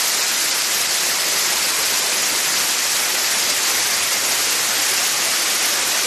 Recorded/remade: recorded